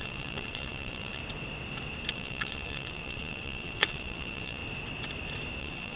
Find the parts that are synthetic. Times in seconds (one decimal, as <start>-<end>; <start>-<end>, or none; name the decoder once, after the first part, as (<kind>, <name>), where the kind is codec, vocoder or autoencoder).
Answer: 0.0-1.2 (vocoder, WaveNeXt); 2.1-4.6; 5.6-6.0